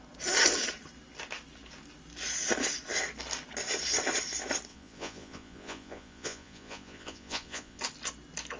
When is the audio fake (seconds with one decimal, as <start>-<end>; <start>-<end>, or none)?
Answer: 4.7-7.8